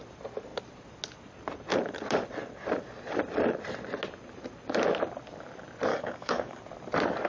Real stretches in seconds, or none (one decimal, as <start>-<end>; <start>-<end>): 0.0-5.9; 6.6-7.3

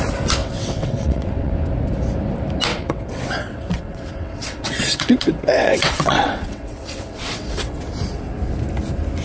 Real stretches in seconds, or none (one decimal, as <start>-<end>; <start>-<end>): 0.0-0.4; 1.5-2.7; 7.8-9.2

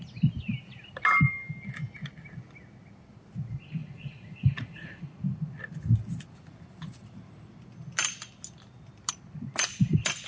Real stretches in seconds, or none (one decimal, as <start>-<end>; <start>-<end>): 0.0-3.8; 5.0-10.3

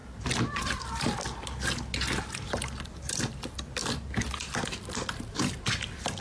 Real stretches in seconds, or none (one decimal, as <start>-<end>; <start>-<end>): 0.0-0.6; 1.2-2.4; 3.8-5.4

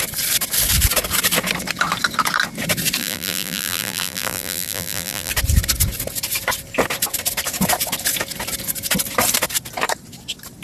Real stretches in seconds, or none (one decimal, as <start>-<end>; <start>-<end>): 0.0-3.0; 5.3-10.6

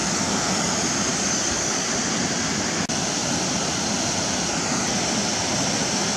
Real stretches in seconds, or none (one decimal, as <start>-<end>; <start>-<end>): 0.7-1.1; 1.9-6.2